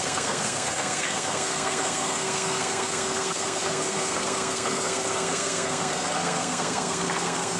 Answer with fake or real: fake